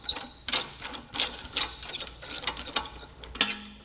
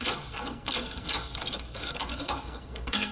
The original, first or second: first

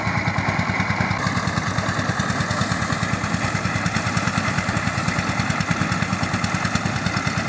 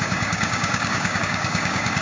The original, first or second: first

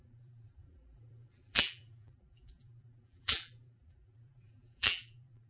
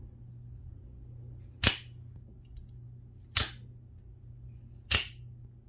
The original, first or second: second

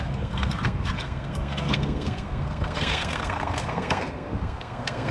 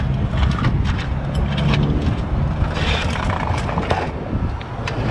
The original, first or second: second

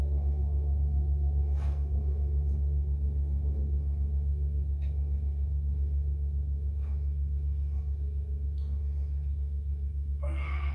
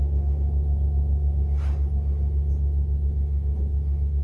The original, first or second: second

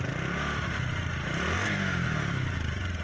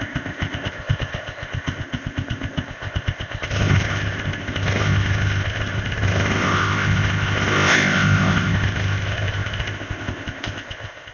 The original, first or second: first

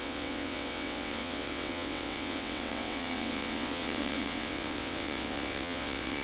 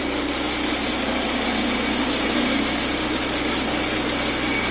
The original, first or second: second